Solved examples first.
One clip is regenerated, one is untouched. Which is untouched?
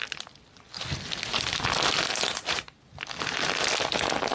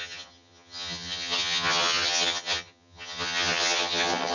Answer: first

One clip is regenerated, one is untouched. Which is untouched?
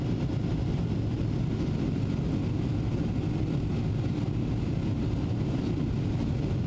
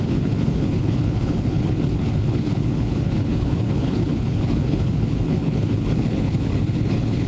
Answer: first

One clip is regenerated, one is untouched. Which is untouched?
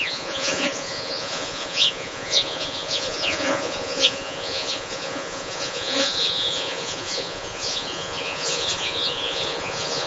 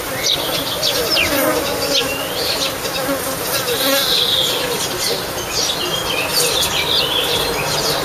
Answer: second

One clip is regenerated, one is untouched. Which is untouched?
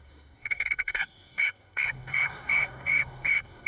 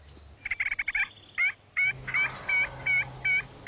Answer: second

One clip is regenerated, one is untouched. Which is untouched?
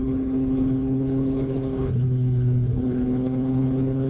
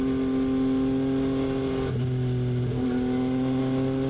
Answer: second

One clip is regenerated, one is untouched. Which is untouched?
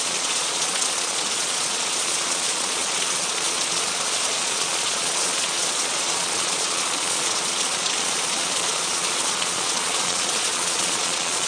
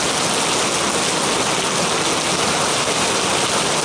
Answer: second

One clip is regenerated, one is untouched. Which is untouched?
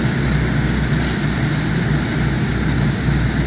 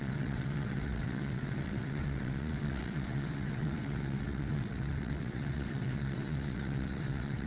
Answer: first